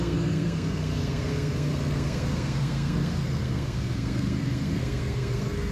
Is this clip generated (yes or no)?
yes